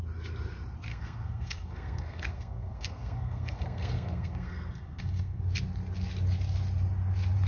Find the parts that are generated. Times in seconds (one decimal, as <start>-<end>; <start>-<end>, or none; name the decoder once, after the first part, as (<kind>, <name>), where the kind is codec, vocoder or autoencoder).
0.9-5.4 (codec, SNAC)